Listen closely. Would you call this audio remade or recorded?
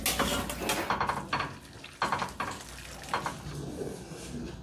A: recorded